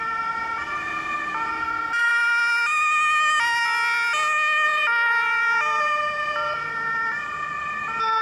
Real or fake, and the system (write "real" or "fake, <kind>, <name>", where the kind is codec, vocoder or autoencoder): real